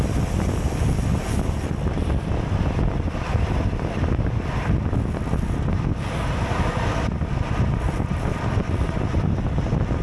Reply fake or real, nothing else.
real